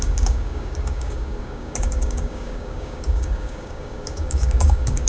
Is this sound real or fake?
fake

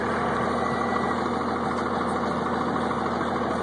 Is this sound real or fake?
real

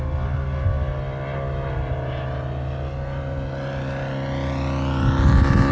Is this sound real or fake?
real